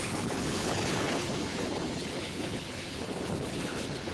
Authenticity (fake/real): fake